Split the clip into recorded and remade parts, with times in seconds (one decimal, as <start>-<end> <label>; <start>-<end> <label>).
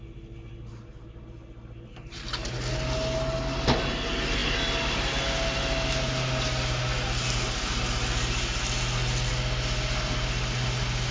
0.0-11.1 recorded